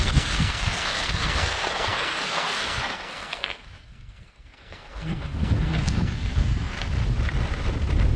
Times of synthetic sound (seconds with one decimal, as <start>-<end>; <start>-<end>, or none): 0.0-7.0